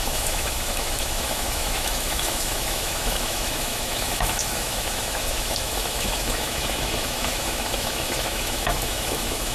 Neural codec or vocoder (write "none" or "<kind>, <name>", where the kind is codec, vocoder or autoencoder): autoencoder, DAC-VAE